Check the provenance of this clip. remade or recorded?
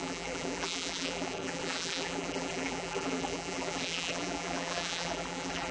remade